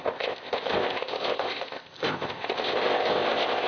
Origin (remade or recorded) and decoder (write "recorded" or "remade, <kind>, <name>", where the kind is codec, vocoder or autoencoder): remade, codec, ZipCodec